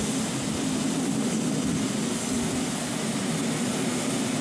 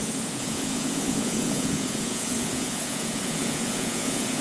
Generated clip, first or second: second